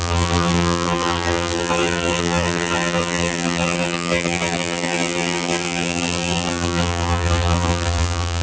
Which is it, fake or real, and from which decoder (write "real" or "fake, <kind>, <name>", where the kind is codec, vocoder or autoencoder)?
fake, vocoder, BigVGAN v2